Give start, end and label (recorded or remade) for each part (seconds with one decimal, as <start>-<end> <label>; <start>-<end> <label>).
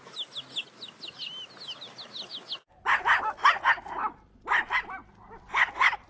0.0-6.1 recorded